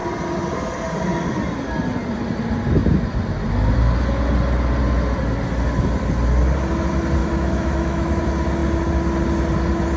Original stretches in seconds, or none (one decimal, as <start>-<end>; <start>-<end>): 0.0-7.2; 8.2-10.0